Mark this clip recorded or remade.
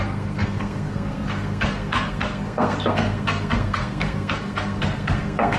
remade